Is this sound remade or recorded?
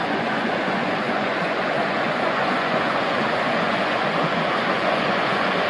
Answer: remade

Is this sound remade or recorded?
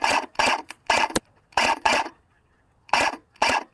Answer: remade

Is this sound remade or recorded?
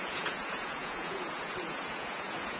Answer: remade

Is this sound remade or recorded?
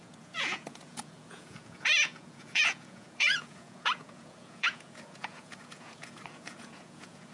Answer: remade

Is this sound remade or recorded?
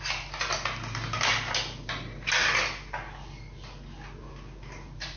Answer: recorded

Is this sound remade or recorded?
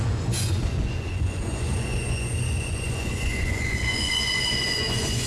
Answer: remade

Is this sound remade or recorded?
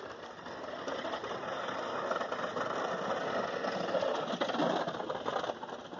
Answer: recorded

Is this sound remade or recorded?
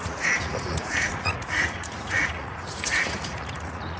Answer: remade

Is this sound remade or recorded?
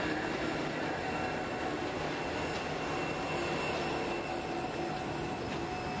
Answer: recorded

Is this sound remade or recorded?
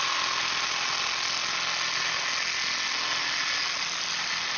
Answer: recorded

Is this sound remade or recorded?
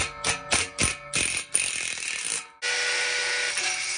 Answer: recorded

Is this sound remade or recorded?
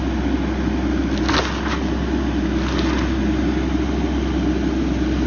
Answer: recorded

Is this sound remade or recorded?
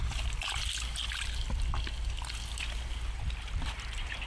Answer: recorded